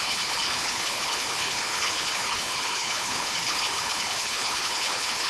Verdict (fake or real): fake